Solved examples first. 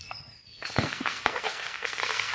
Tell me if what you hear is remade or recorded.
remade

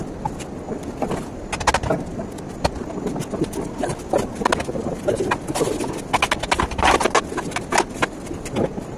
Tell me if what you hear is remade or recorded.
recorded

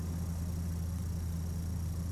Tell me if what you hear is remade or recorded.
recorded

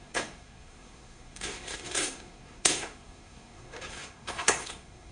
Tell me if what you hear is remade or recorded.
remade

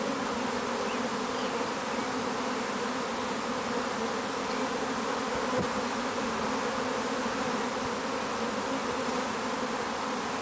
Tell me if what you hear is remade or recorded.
recorded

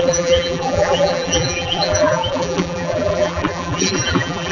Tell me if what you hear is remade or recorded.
remade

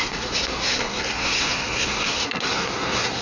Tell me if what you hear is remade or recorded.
remade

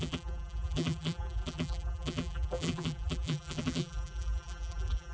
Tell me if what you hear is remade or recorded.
remade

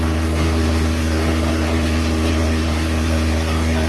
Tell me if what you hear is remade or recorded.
remade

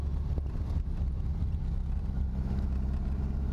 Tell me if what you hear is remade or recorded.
recorded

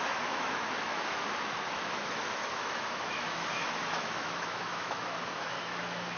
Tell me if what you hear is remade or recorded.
remade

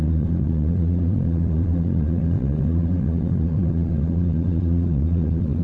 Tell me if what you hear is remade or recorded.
remade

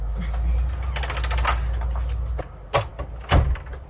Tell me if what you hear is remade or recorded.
recorded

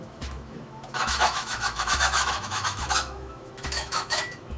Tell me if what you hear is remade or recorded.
remade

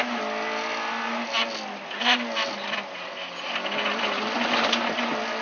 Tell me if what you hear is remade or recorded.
recorded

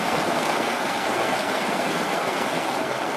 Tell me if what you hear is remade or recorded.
remade